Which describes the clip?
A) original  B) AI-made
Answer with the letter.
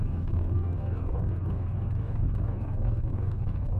B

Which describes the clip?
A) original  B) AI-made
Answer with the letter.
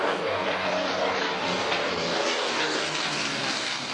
B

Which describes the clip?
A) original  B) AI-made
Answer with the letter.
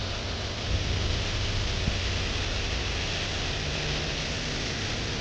A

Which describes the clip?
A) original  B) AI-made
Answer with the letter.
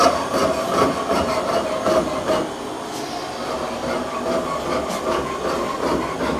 A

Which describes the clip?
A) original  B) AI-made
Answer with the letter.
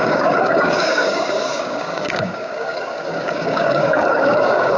B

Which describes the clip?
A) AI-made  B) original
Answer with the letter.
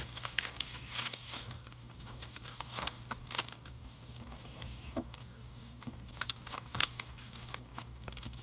A